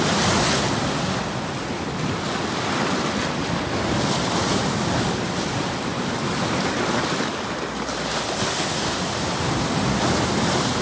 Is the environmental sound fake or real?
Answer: real